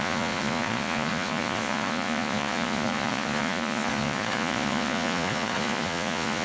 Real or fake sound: fake